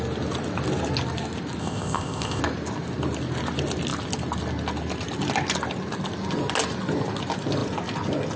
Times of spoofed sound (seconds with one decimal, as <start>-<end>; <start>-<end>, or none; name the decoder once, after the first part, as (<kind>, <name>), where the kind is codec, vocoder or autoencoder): 1.6-2.4 (codec, ZipCodec)